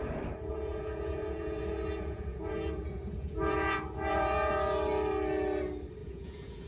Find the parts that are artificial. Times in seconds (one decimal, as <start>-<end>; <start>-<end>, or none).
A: 0.5-4.5; 6.0-6.7